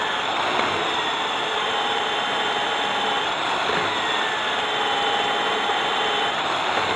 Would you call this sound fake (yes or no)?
no